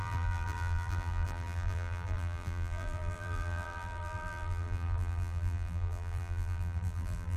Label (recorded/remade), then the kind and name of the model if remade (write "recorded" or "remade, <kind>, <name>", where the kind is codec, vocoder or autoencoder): remade, vocoder, BigVGAN v2